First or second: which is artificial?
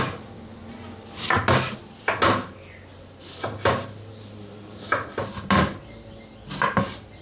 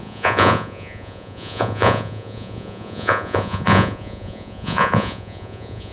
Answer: second